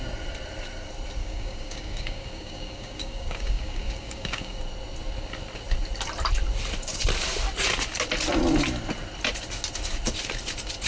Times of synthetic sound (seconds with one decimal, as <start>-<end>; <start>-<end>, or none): 1.2-4.6